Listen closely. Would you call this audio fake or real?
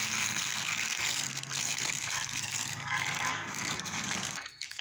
fake